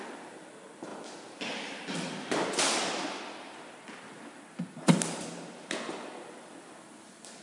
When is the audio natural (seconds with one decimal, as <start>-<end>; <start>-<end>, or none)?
0.9-1.9